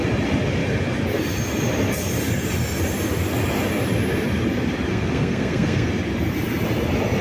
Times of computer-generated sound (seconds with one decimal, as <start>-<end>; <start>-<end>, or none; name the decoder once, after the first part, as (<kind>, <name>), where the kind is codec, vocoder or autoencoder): 4.9-5.9 (codec, SNAC)